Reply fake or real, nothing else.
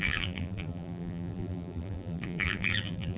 fake